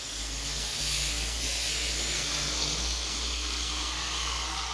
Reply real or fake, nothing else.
fake